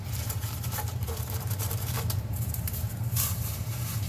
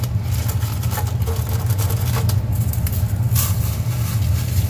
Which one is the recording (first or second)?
second